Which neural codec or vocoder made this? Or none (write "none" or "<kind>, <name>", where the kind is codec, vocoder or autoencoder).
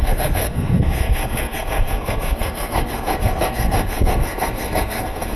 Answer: codec, SNAC